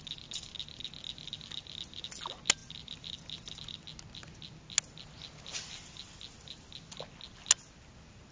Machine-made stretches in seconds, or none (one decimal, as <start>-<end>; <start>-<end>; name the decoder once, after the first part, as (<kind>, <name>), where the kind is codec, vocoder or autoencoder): none